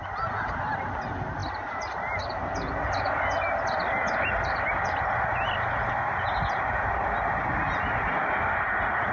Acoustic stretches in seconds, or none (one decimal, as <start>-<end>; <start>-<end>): 0.0-9.1